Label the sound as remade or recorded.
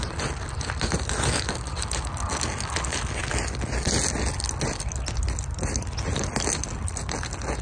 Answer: recorded